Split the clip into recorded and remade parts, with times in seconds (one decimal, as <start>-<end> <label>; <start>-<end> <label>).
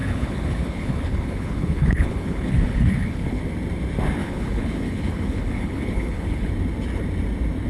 0.0-3.4 remade; 3.4-4.2 recorded; 4.2-6.5 remade; 6.5-7.7 recorded